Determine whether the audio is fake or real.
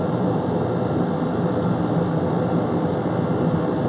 real